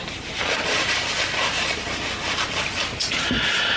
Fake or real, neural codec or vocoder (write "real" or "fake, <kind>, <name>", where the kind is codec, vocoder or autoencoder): real